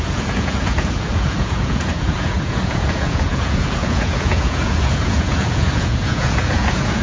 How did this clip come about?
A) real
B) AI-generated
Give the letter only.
B